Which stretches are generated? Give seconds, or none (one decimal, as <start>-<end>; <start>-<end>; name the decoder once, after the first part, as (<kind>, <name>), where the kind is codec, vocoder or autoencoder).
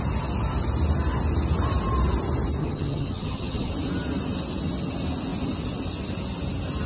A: 2.6-3.7 (vocoder, HiFi-GAN)